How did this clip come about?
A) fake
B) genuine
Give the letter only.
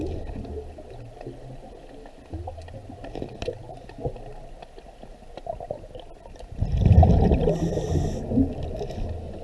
B